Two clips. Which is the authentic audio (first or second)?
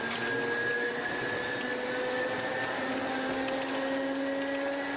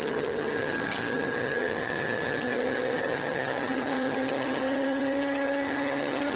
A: first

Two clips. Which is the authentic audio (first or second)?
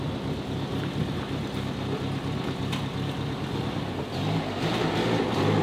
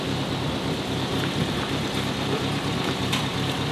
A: first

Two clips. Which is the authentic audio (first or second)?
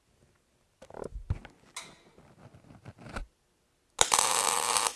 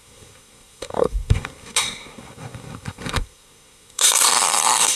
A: first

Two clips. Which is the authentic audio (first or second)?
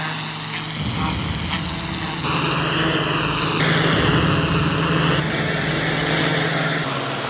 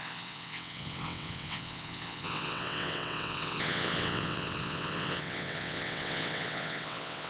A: first